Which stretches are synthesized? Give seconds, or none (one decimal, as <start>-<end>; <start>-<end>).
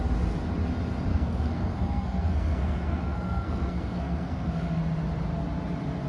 1.1-4.8